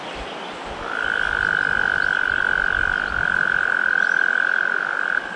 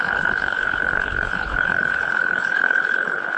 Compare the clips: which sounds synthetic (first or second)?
second